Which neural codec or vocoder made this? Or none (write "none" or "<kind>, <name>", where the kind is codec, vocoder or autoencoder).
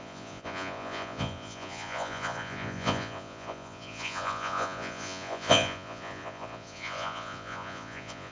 vocoder, Vocos